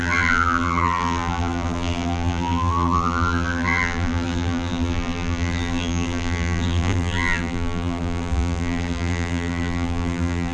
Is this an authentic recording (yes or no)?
no